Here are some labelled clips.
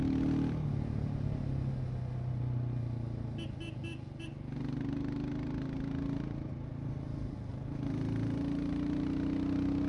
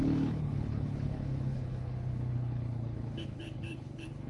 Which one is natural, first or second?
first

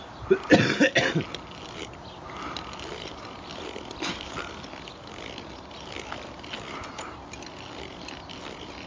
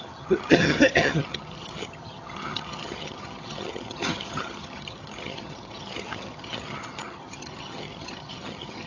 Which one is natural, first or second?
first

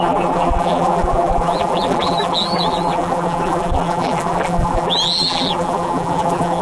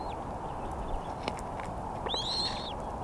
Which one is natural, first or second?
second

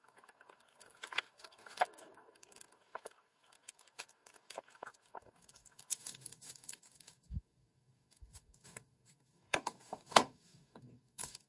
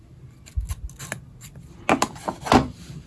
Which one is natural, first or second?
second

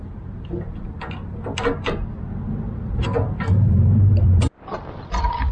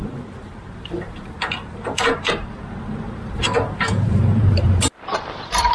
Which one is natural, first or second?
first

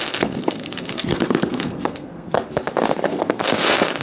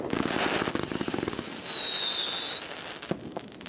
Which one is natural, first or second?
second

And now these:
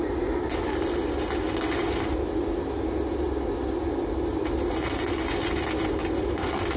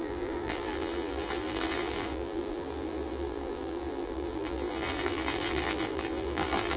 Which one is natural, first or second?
first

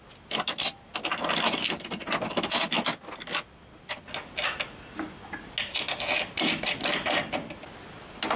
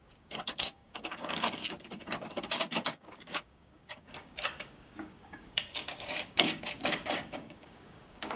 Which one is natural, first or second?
first